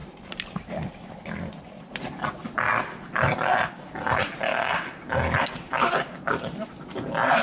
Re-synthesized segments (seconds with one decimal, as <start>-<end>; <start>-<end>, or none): none